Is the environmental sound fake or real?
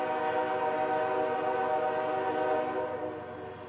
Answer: real